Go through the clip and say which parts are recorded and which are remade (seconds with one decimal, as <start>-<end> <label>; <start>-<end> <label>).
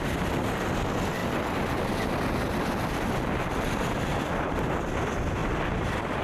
0.0-6.2 recorded